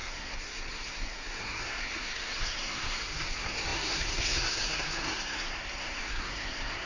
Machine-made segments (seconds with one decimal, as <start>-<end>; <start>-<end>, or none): 0.0-6.9